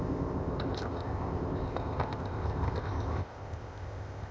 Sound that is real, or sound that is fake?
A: fake